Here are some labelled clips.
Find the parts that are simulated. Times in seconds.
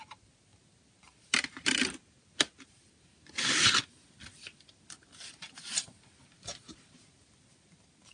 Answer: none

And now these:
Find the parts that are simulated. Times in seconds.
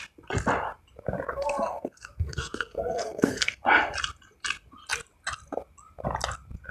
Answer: 1.3-3.5 (codec, SNAC)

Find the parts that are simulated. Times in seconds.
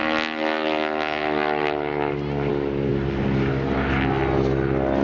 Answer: none